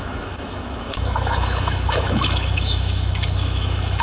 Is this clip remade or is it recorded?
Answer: remade